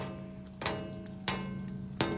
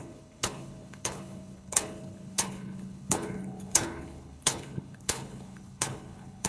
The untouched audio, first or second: first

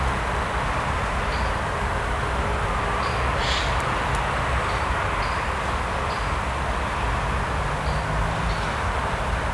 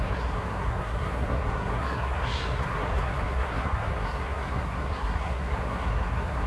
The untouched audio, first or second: first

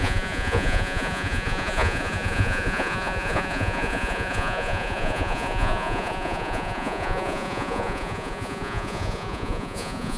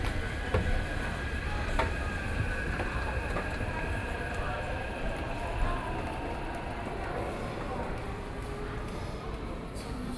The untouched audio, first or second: second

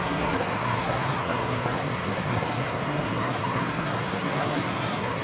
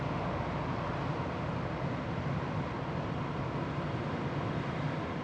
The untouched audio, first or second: second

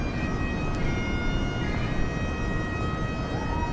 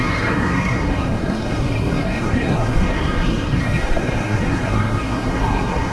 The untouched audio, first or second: first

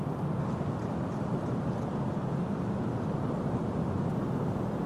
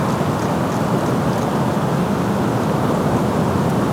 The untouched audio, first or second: second